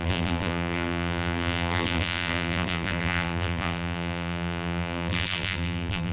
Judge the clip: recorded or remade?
remade